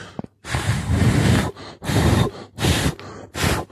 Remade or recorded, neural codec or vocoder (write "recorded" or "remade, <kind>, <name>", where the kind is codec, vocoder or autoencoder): recorded